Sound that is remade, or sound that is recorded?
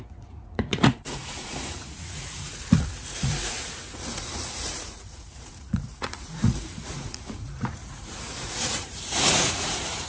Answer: remade